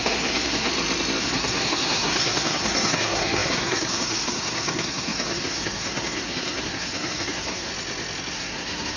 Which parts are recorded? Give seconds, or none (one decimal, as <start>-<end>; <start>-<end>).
0.7-1.2; 7.7-8.3